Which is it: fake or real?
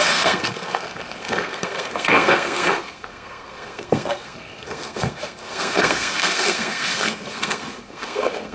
fake